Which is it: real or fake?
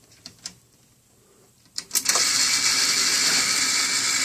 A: fake